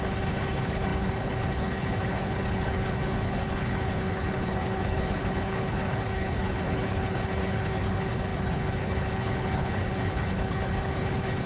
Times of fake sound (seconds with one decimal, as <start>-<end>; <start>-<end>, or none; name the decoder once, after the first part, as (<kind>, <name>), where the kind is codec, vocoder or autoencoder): 0.0-11.5 (codec, HILCodec)